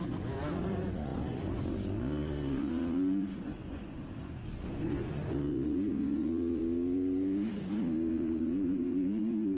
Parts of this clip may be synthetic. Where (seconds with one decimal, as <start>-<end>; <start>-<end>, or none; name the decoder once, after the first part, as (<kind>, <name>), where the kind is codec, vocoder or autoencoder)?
0.0-6.6 (vocoder, Vocos); 8.1-9.6